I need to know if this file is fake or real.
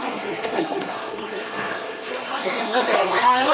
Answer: fake